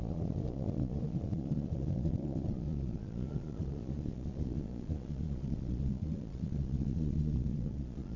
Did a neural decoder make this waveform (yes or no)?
yes